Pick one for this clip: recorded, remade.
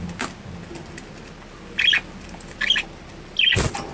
recorded